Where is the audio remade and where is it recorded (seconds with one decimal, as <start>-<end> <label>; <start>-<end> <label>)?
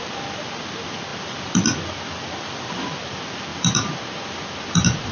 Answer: 0.0-5.1 recorded